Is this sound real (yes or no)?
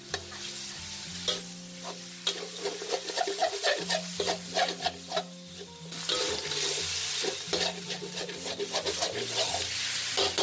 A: yes